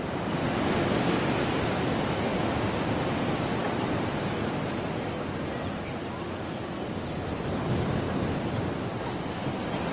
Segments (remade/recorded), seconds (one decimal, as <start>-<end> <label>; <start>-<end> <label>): 0.0-9.9 recorded